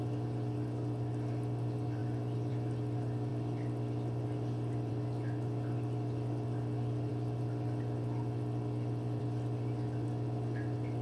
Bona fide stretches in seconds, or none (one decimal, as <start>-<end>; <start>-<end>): 0.0-11.0